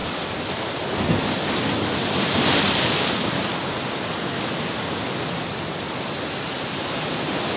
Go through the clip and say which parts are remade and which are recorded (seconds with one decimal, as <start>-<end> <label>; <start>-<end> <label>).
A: 0.0-7.6 recorded